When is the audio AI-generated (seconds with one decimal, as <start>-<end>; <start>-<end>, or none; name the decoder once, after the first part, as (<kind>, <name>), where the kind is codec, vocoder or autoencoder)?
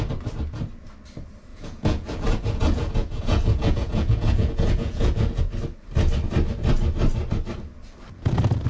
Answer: 1.5-5.5 (vocoder, Vocos)